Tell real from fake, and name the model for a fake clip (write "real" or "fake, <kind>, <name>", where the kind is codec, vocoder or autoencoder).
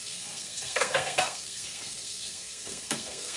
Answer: fake, codec, SNAC